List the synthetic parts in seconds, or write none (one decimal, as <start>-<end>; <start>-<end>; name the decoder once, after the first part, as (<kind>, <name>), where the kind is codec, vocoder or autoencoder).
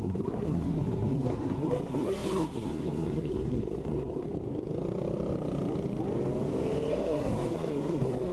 0.0-4.3 (codec, SNAC); 6.9-8.3